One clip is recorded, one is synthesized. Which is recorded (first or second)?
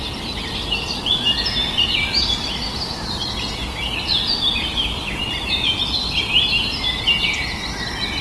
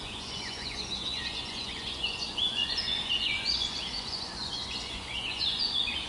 first